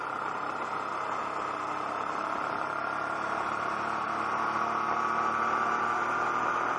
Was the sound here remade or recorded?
recorded